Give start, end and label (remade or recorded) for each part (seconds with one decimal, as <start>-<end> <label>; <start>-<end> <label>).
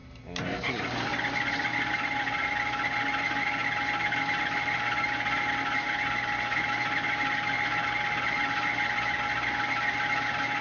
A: 0.0-10.6 recorded